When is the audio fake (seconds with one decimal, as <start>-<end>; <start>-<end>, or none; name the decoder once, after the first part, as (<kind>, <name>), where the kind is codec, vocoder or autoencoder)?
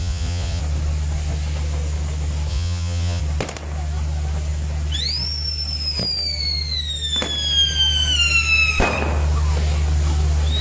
0.0-0.6 (vocoder, Vocos); 2.5-3.2